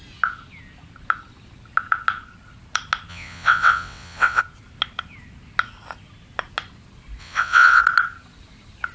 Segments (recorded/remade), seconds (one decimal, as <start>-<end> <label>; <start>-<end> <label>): 0.0-3.1 recorded; 3.1-4.4 remade; 4.4-7.2 recorded; 7.2-7.8 remade; 7.8-8.9 recorded